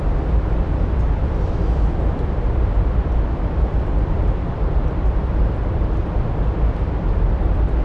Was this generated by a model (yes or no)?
yes